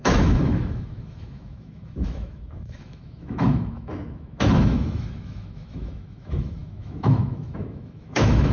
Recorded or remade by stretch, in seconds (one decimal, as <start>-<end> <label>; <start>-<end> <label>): 0.0-8.5 remade